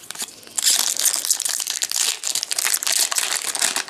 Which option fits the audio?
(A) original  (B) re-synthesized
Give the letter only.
A